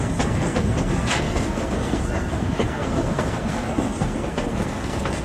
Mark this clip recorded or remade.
remade